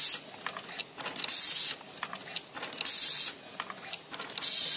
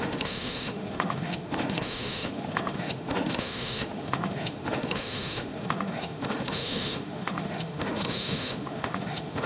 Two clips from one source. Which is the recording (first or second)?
first